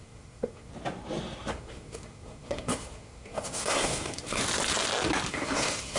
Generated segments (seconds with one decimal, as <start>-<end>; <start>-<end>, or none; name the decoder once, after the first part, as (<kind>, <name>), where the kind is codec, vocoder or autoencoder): 0.0-0.7 (codec, SNAC); 1.5-4.4; 5.3-6.0

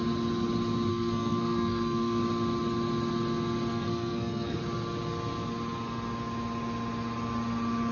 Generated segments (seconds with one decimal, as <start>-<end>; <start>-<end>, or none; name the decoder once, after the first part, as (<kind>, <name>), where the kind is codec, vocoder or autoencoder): 0.9-2.2 (codec, SNAC); 3.7-4.6

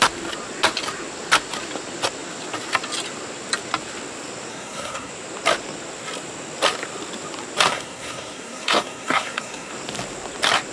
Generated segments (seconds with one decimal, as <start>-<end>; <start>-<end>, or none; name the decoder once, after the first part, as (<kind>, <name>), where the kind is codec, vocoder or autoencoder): 4.5-5.1 (codec, SNAC); 7.7-9.7

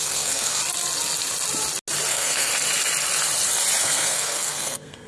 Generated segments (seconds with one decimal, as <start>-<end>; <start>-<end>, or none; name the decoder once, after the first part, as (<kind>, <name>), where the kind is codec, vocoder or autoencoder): 0.0-0.6 (codec, SNAC); 2.1-2.5; 3.8-5.1

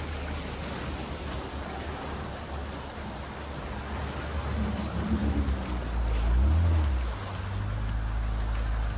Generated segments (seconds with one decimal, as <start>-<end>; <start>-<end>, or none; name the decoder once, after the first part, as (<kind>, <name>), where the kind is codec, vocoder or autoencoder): none